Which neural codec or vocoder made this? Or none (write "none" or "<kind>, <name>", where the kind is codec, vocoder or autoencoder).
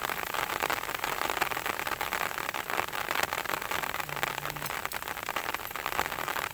none